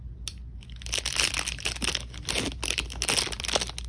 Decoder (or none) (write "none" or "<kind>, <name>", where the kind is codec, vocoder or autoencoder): none